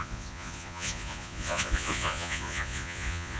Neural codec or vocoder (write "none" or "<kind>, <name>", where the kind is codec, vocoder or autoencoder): vocoder, Vocos